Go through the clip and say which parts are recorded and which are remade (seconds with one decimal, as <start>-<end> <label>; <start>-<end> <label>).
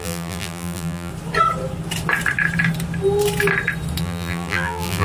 0.0-1.1 remade; 1.1-4.0 recorded; 4.0-5.0 remade